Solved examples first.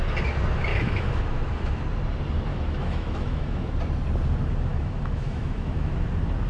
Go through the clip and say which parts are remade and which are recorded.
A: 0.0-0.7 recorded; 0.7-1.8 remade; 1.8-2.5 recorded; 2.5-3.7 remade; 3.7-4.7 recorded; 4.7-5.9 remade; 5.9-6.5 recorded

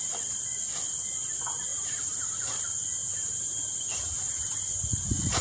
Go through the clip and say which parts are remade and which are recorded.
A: 0.0-1.7 recorded; 1.7-2.4 remade; 2.4-3.0 recorded; 3.0-5.0 remade; 5.0-5.4 recorded

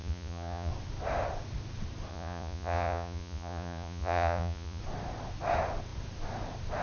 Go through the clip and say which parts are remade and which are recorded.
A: 0.0-0.7 remade; 0.7-2.1 recorded; 2.1-4.8 remade; 4.8-6.8 recorded

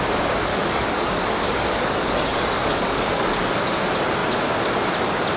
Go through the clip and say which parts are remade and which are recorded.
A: 0.0-0.5 recorded; 0.5-3.7 remade; 3.7-5.4 recorded

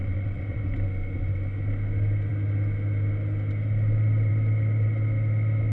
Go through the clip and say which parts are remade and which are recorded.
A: 0.0-0.6 remade; 0.6-5.7 recorded